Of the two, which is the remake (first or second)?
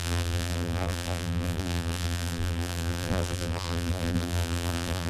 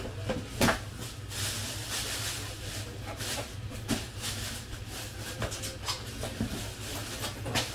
first